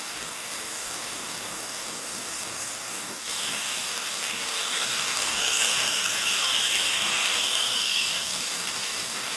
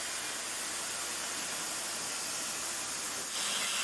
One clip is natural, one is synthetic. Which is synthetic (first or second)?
first